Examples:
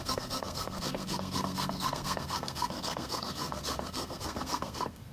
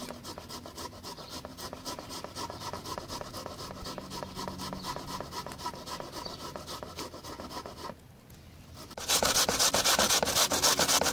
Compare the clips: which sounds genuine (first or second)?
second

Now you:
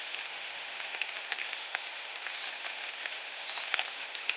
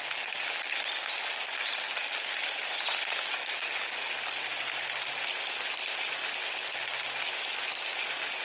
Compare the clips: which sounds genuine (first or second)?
second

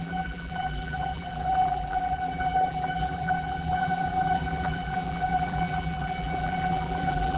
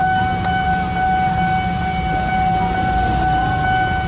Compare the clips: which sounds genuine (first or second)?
second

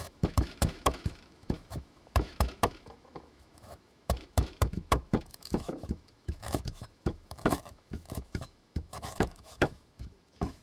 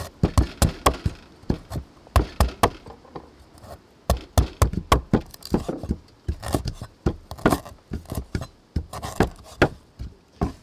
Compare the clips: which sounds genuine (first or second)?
second